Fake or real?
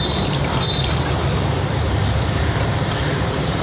fake